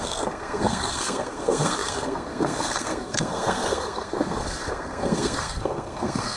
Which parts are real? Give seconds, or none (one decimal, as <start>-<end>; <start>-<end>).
none